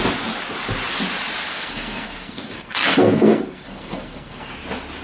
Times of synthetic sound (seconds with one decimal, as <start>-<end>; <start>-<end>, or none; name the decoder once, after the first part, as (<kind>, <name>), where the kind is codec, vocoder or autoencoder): 1.5-4.5 (codec, SNAC)